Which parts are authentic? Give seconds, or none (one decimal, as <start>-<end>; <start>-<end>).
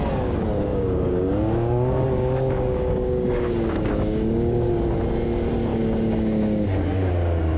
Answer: 0.0-0.7; 4.7-5.7; 7.1-7.6